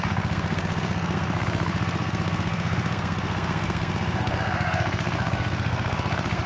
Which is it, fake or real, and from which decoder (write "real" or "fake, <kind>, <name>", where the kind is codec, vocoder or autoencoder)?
fake, codec, SNAC